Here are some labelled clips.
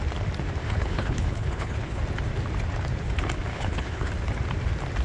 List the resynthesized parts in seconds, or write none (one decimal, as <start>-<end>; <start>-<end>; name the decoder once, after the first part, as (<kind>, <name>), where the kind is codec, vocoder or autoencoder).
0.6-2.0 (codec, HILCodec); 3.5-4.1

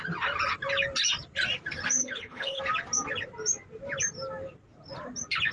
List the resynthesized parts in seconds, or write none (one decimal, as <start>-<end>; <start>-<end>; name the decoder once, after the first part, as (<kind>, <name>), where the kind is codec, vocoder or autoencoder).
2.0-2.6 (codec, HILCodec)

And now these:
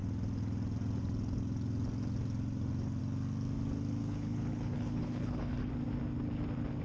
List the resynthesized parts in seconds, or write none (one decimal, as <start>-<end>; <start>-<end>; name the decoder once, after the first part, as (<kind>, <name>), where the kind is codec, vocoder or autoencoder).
4.0-5.7 (codec, HILCodec)